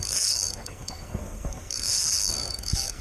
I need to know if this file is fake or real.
fake